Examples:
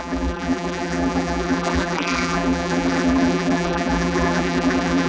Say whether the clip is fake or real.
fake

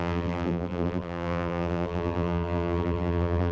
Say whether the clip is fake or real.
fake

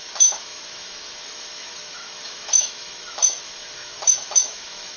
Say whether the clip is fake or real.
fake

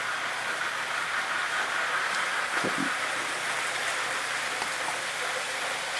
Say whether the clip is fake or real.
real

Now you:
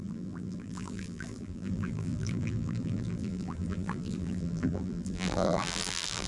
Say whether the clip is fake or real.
fake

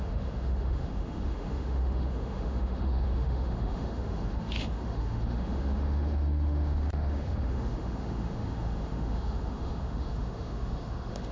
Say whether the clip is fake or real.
fake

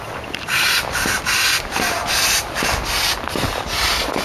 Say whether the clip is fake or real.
real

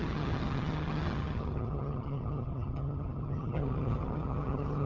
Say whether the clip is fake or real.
fake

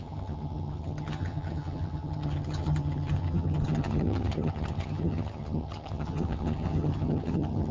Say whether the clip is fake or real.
fake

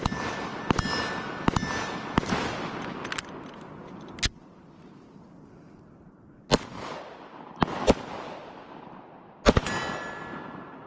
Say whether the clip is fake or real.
real